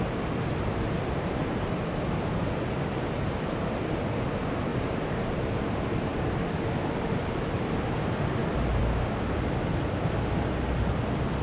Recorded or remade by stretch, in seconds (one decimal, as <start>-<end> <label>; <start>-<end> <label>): 0.0-0.7 recorded; 0.7-1.4 remade; 1.4-4.7 recorded; 4.7-5.6 remade; 5.6-11.4 recorded